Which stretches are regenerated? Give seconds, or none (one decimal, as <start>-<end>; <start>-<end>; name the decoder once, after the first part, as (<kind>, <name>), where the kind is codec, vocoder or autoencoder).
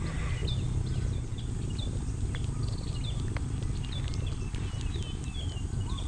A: none